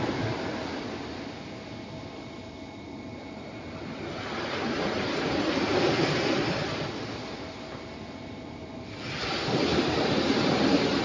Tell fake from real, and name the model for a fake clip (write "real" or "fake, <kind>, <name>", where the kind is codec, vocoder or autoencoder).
real